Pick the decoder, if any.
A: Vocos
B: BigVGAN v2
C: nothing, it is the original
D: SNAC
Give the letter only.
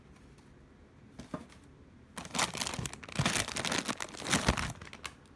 C